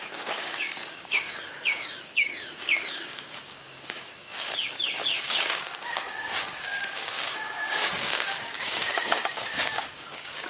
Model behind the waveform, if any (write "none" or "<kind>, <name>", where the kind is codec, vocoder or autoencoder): codec, DAC